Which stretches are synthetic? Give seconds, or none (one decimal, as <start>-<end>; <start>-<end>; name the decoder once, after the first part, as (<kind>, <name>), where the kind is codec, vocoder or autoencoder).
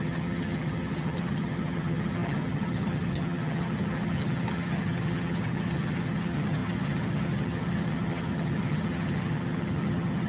0.0-10.3 (vocoder, HiFi-GAN)